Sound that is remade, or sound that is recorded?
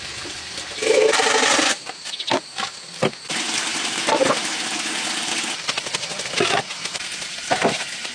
recorded